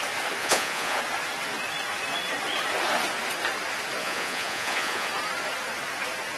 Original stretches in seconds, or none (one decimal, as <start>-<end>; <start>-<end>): 0.0-0.4; 1.0-4.0; 5.1-6.4